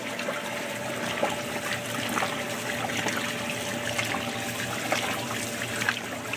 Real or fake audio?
real